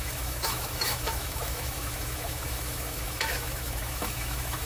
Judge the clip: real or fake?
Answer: fake